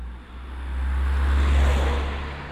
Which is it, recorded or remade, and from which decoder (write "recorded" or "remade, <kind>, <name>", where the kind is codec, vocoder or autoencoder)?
recorded